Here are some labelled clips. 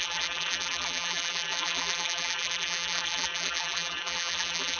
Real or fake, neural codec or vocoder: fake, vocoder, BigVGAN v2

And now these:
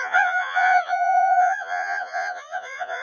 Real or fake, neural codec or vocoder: fake, vocoder, Vocos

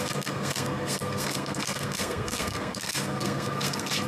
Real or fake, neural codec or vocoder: fake, codec, SNAC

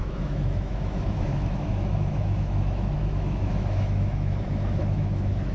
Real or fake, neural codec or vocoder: fake, autoencoder, DAC-VAE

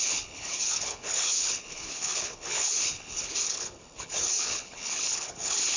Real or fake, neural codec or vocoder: fake, codec, HILCodec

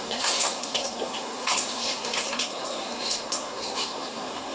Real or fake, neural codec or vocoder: fake, codec, SNAC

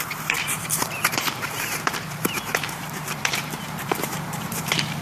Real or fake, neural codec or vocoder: fake, vocoder, BigVGAN v2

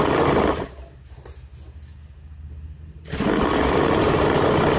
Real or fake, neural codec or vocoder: real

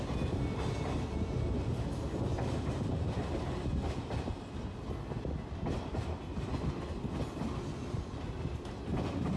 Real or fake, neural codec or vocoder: real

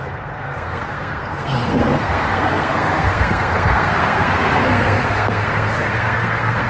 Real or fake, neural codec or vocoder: fake, codec, SNAC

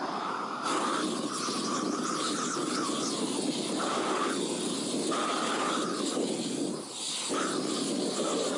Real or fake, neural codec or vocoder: real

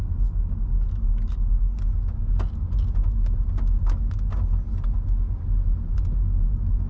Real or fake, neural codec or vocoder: real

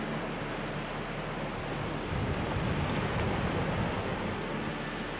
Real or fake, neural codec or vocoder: real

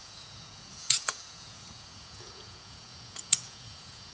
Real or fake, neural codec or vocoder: fake, vocoder, Vocos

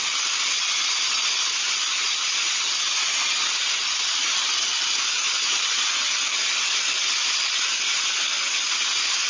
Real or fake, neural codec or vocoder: real